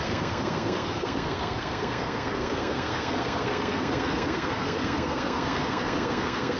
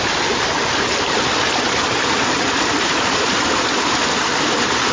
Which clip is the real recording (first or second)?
second